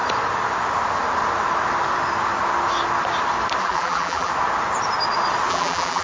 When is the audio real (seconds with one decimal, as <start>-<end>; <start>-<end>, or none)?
0.0-3.6; 4.3-5.5